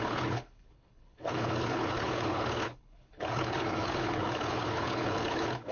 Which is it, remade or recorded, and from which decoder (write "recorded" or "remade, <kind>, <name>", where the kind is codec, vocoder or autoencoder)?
remade, codec, HILCodec